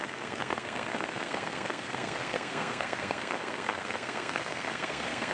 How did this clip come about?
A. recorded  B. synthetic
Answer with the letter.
B